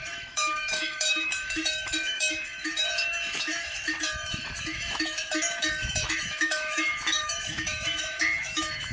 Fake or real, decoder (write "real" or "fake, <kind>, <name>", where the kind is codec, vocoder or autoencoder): fake, autoencoder, DAC-VAE